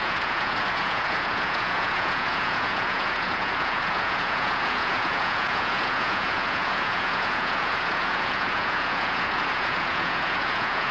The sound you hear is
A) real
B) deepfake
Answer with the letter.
B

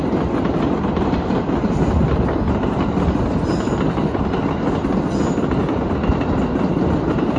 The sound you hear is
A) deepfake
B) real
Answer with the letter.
B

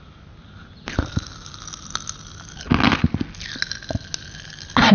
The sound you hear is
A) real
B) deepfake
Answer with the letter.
A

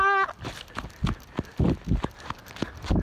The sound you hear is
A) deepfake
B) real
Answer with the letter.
B